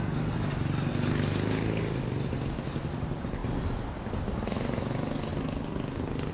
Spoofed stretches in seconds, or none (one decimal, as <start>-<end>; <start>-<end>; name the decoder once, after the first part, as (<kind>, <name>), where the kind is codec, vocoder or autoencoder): none